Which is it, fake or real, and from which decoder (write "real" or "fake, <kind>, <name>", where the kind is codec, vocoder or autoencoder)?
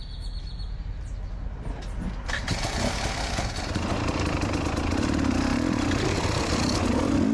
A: real